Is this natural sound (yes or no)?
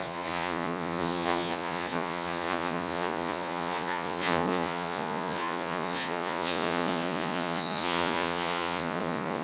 no